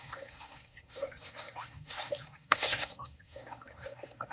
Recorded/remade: remade